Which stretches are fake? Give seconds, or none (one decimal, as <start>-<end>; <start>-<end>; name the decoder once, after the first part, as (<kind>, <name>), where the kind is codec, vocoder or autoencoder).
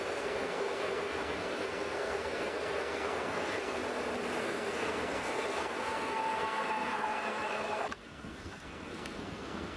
0.0-3.8 (codec, SNAC); 4.4-9.8